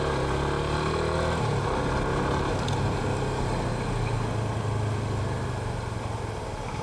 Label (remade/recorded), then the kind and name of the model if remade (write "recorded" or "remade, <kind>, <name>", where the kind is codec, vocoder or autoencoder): recorded